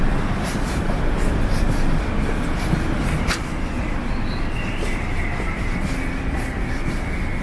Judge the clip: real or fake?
fake